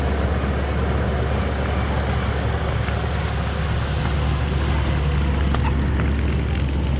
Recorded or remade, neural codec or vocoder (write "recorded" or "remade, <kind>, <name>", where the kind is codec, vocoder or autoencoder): recorded